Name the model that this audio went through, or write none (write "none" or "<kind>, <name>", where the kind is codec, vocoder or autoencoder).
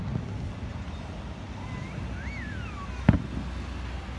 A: none